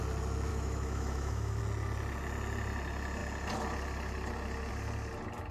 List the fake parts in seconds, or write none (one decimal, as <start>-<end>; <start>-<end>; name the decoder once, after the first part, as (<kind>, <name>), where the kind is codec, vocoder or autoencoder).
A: 0.5-1.6 (autoencoder, DAC-VAE)